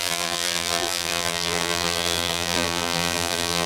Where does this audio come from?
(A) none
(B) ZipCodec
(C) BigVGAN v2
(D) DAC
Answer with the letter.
C